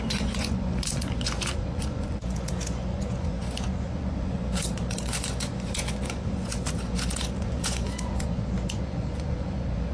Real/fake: fake